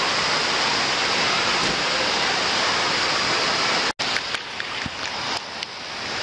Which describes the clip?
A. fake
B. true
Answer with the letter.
B